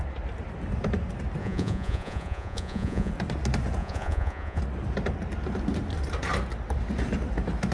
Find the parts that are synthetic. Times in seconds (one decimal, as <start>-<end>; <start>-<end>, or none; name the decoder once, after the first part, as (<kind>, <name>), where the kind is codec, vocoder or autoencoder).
1.4-3.1 (vocoder, Vocos); 3.8-4.6